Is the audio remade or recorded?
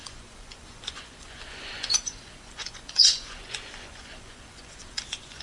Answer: remade